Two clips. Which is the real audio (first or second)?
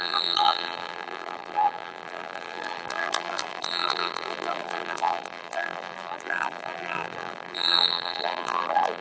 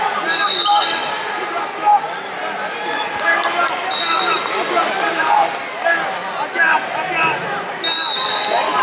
second